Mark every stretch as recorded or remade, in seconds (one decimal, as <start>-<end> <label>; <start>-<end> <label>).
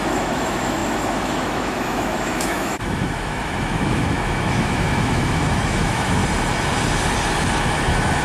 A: 0.0-6.2 remade; 6.2-7.7 recorded; 7.7-8.2 remade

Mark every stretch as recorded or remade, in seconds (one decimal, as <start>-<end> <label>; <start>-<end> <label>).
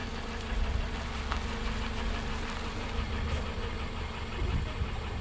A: 0.0-5.2 recorded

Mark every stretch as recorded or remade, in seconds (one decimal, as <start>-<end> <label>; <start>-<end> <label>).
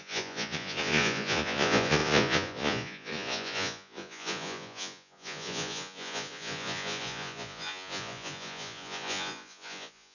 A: 0.0-10.1 remade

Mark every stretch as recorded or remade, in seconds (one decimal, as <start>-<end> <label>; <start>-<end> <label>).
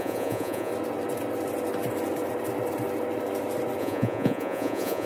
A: 0.0-0.7 remade; 0.7-3.8 recorded; 3.8-5.1 remade